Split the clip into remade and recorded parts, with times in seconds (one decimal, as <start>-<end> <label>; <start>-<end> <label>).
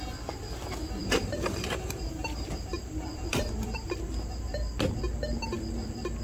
0.0-1.0 recorded; 1.0-4.0 remade; 4.0-6.2 recorded